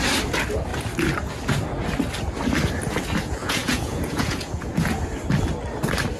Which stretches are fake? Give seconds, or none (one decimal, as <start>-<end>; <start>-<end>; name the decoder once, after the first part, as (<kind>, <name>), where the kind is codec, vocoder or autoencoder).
3.4-5.0 (vocoder, Vocos)